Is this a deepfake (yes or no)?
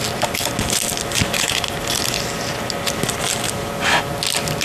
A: no